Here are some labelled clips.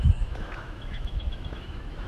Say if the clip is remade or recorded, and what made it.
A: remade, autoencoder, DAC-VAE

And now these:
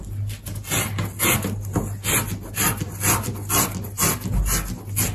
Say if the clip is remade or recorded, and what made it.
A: recorded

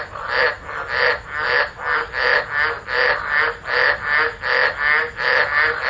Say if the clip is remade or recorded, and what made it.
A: recorded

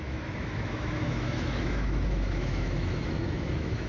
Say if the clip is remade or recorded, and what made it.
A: remade, autoencoder, DAC-VAE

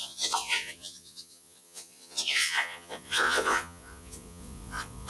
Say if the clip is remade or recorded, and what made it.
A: remade, vocoder, Vocos